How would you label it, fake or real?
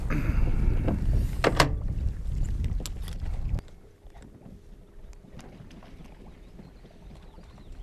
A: real